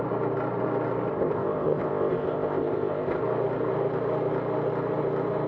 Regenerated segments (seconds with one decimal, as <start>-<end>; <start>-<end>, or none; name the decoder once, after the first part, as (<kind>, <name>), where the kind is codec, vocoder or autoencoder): 1.1-3.2 (codec, ZipCodec)